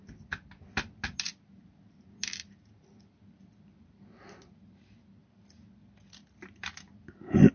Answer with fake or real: real